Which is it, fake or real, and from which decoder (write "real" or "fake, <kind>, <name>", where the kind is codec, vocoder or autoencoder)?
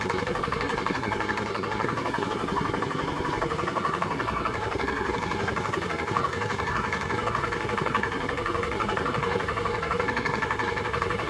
fake, codec, SNAC